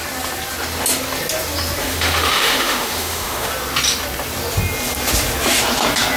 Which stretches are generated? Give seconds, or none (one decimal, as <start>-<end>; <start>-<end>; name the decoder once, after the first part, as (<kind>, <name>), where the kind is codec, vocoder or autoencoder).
1.8-3.5 (autoencoder, DAC-VAE)